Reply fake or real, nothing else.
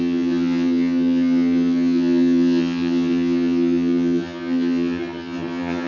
fake